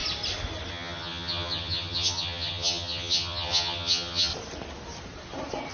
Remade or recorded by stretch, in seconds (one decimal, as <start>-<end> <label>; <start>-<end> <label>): 0.0-0.7 recorded; 0.7-4.3 remade; 4.3-5.7 recorded